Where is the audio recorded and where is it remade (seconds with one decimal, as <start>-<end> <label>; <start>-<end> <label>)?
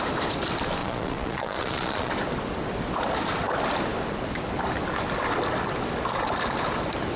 0.0-0.8 recorded; 0.8-2.1 remade; 2.1-7.2 recorded